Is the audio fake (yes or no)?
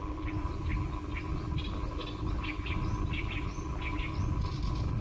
no